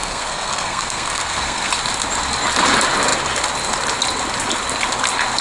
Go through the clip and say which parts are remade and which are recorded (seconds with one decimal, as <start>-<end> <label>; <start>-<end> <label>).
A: 0.0-1.7 remade; 1.7-5.4 recorded

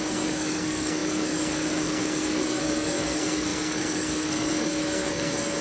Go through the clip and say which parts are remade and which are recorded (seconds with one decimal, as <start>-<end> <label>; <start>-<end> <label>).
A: 0.0-5.6 remade